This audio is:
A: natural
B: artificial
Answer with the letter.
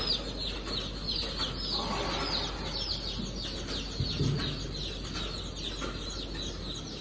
A